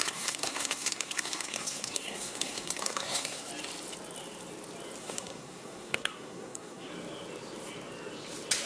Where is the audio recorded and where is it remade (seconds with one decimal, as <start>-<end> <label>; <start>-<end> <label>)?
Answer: 0.0-3.5 remade; 3.5-5.0 recorded; 5.0-6.9 remade; 6.9-8.7 recorded